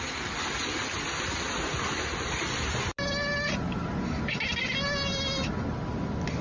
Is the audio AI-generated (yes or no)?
no